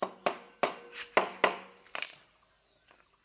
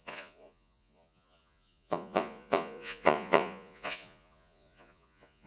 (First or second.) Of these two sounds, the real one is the first